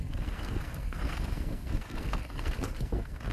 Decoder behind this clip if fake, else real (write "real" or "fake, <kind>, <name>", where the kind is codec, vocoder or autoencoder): fake, codec, SNAC